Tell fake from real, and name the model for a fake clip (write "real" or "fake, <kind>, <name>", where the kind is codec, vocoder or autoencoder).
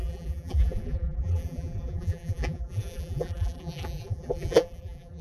fake, vocoder, BigVGAN v2